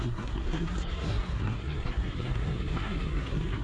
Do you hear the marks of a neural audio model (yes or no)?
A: yes